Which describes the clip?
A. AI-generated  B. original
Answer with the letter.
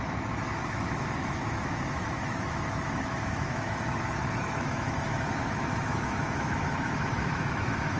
A